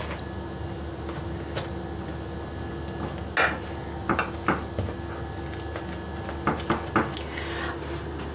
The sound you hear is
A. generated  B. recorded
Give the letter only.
B